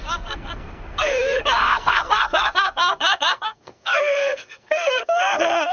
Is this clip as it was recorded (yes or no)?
no